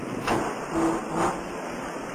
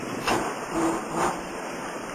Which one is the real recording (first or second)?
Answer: first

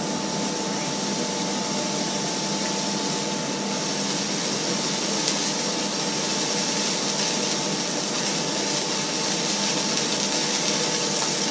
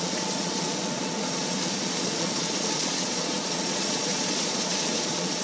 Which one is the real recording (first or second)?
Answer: first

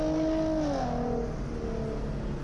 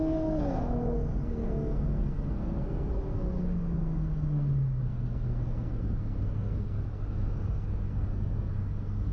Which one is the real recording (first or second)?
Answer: first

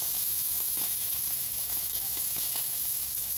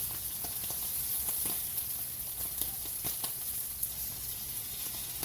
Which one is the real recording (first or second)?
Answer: second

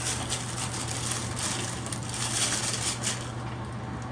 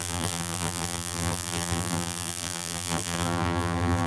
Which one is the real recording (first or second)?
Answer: first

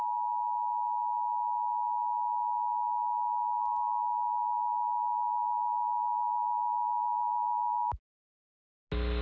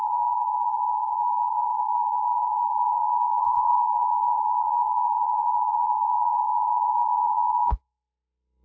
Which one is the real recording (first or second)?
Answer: first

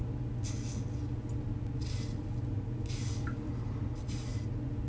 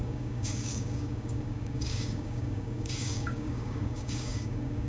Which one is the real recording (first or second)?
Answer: first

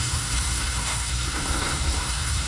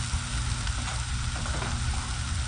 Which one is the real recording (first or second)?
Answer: second